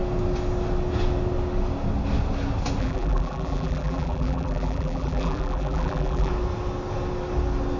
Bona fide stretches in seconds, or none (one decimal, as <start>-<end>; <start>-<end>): 0.0-2.8; 6.3-7.8

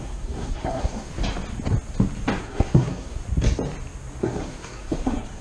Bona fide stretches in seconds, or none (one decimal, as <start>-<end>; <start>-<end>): 1.1-2.4; 3.2-4.2

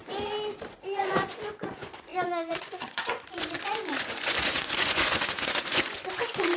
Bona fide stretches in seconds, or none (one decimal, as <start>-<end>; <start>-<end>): 0.0-0.7

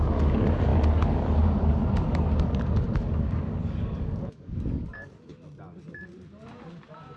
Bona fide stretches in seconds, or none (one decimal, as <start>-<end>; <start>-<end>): 5.3-7.2

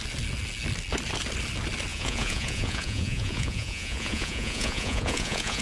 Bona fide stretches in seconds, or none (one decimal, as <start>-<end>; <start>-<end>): 0.0-1.9

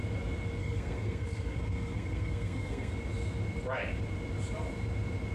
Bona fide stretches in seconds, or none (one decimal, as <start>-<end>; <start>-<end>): 0.0-0.6; 2.9-5.3